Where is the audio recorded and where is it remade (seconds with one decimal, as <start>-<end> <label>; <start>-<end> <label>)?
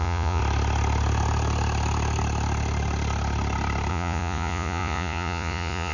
0.0-0.4 remade; 0.4-3.9 recorded; 3.9-5.9 remade